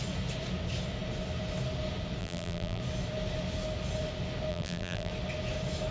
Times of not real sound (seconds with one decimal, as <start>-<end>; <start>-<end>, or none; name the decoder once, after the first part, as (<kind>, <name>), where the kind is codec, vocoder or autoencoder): 2.2-2.8 (vocoder, BigVGAN v2); 4.5-5.1